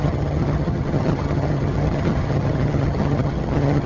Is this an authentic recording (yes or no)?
no